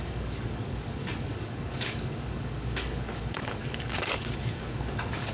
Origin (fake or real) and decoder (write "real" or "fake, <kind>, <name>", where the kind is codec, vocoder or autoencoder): fake, codec, DAC